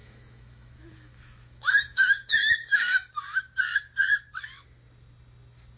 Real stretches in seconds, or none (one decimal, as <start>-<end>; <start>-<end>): 3.1-5.8

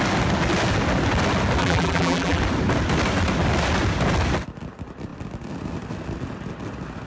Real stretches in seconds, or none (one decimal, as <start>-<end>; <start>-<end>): 0.0-1.6; 2.4-7.1

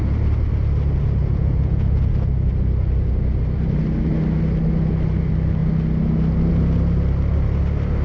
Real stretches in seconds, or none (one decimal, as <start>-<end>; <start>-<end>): 0.0-1.2; 2.1-8.0

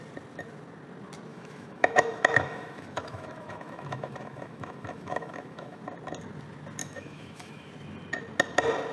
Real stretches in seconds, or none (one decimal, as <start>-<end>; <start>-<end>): 0.0-1.3; 5.8-6.8; 7.7-8.9

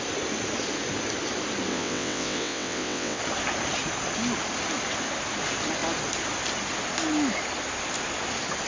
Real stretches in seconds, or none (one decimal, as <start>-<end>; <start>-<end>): 0.0-1.7; 3.2-8.7

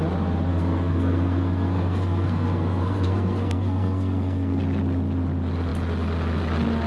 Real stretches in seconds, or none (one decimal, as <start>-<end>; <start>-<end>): 0.0-0.5; 4.6-6.9